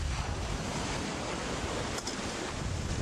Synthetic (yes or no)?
no